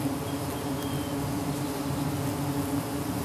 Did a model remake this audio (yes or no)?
no